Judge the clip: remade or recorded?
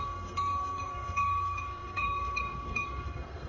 remade